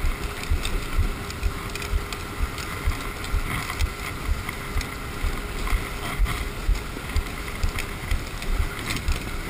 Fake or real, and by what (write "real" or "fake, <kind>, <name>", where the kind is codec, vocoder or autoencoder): real